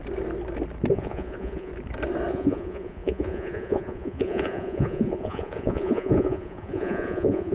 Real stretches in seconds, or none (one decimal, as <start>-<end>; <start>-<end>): 0.0-0.9; 1.7-2.3